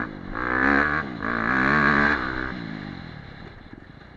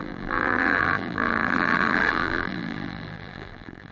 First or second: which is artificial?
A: second